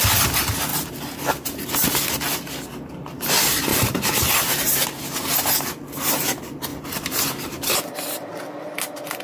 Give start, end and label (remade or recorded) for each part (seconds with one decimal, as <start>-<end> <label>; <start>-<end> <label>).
0.0-0.7 recorded; 0.7-1.7 remade; 1.7-6.7 recorded; 6.7-8.3 remade; 8.3-9.2 recorded